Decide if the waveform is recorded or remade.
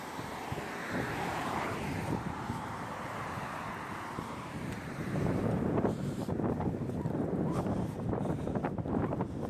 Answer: remade